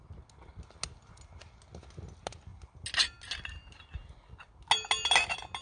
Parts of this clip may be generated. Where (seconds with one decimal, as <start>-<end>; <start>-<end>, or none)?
none

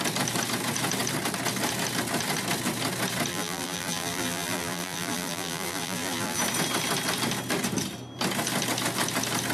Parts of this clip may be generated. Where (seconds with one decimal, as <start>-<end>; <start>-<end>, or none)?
3.3-6.4